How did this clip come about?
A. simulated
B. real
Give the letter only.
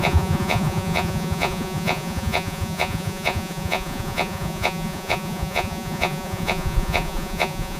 A